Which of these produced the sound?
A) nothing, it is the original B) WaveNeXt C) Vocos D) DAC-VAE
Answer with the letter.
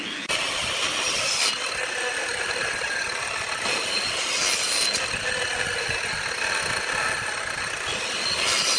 A